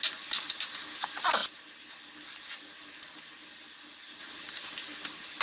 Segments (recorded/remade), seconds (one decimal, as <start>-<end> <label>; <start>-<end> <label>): 0.0-5.4 recorded

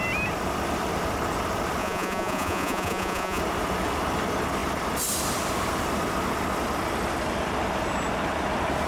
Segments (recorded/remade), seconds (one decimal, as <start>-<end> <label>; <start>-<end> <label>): 0.0-1.8 recorded; 1.8-3.4 remade; 3.4-8.9 recorded

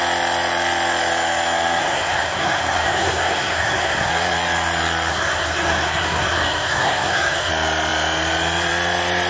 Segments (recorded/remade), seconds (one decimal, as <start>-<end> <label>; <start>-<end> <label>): 0.0-1.8 recorded; 1.8-4.1 remade; 4.1-5.1 recorded; 5.1-7.5 remade; 7.5-9.3 recorded

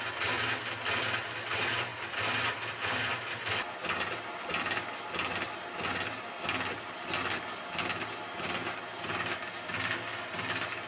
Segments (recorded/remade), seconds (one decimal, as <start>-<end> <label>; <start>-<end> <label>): 0.0-10.9 recorded

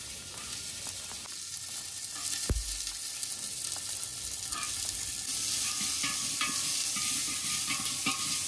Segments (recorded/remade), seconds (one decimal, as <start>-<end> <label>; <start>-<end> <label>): 0.0-8.5 recorded

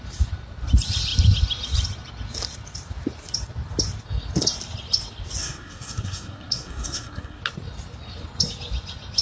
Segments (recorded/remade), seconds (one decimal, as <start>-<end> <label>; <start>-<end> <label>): 0.0-5.4 recorded; 5.4-7.4 remade; 7.4-9.2 recorded

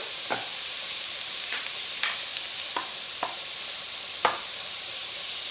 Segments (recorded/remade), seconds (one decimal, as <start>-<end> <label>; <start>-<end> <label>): 0.0-2.3 remade; 2.3-3.5 recorded; 3.5-5.5 remade